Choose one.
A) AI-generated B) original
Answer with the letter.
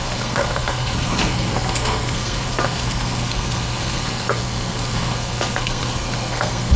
A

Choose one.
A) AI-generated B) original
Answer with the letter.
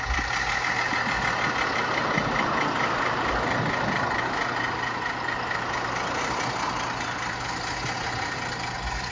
B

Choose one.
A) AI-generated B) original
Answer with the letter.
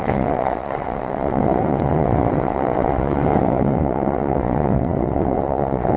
A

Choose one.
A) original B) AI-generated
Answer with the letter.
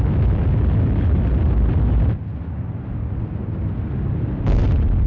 A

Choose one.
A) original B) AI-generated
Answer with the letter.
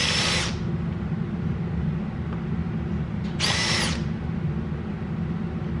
A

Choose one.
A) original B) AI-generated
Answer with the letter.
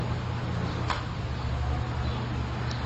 A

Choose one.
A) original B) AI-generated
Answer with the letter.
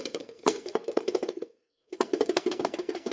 B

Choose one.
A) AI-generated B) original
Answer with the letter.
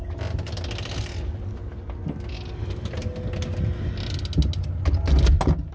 B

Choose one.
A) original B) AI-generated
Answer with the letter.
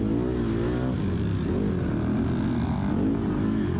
A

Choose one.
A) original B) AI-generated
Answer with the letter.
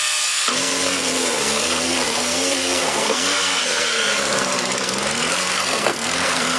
B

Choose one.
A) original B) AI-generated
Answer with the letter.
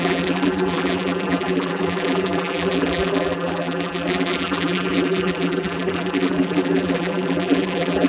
B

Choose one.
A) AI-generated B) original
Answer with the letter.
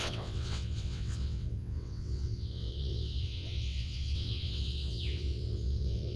A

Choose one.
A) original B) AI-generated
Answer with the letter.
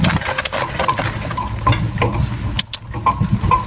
A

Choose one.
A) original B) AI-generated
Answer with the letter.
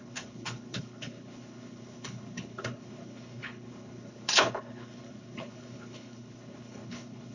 B